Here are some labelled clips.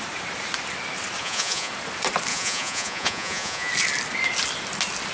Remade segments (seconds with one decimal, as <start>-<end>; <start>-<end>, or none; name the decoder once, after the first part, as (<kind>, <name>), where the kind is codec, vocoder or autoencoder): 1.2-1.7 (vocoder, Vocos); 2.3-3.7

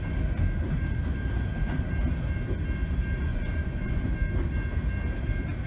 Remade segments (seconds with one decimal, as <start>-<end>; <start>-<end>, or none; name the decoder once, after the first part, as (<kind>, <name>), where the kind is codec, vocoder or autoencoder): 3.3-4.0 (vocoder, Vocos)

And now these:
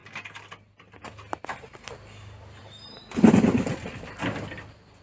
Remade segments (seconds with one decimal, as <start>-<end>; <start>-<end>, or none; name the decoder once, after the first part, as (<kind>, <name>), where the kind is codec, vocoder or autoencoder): none